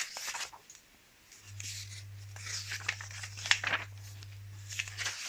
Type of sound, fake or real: real